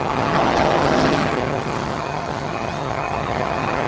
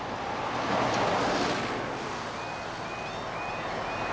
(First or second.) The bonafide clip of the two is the second